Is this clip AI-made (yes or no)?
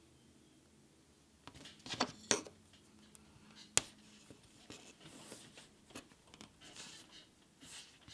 no